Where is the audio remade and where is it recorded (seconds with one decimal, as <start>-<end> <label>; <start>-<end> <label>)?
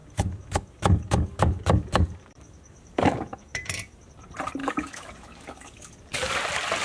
0.0-4.1 remade; 4.1-4.6 recorded; 4.6-6.3 remade; 6.3-6.8 recorded